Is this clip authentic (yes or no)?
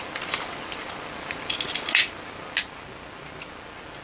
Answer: yes